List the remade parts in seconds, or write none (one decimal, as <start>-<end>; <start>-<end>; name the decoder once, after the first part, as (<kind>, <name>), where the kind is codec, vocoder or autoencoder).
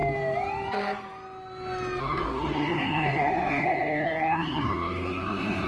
2.0-5.7 (codec, SNAC)